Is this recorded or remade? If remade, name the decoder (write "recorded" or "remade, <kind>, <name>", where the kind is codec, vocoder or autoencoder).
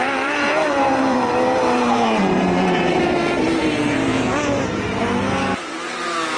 remade, vocoder, BigVGAN v2